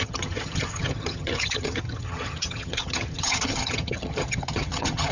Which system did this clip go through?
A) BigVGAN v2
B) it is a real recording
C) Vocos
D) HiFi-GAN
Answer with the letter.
D